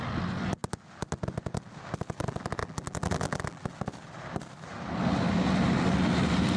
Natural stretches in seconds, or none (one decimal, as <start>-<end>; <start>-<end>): 0.0-2.6; 3.7-6.6